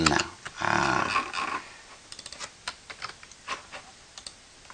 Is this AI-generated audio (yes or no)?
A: no